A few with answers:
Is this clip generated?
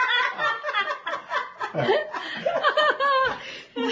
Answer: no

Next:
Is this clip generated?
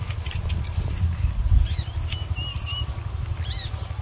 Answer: no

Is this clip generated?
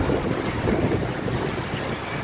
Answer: no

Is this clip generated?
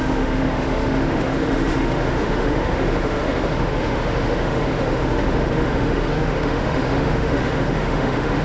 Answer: yes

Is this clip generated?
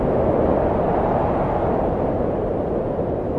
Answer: no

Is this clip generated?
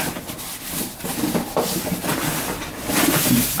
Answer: no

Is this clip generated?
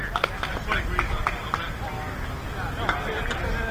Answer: no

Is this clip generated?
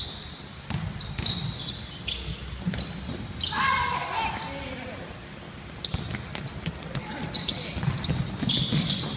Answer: no